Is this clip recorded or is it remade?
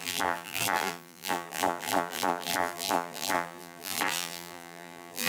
remade